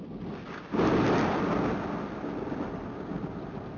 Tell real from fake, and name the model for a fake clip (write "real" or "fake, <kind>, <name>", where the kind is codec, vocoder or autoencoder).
real